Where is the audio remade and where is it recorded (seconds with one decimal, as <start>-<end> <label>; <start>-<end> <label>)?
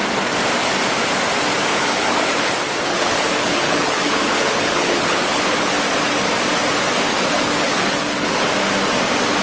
0.0-1.7 recorded; 1.7-2.5 remade; 2.5-2.9 recorded; 2.9-5.7 remade; 5.7-7.1 recorded; 7.1-8.5 remade; 8.5-9.4 recorded